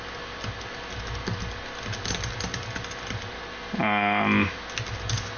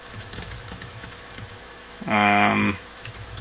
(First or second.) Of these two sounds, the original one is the first